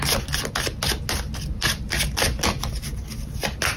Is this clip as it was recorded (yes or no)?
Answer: yes